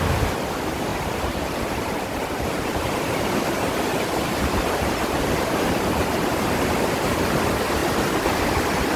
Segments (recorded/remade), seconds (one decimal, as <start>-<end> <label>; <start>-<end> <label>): 0.0-0.9 recorded; 0.9-3.4 remade; 3.4-3.9 recorded; 3.9-7.2 remade; 7.2-9.0 recorded